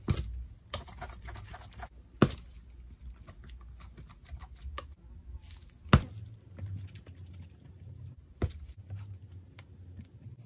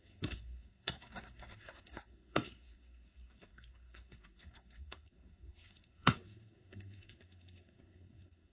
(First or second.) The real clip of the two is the first